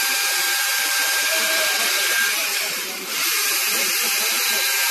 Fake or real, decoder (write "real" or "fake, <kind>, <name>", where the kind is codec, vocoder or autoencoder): fake, vocoder, BigVGAN v2